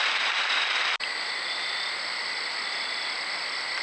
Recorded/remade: recorded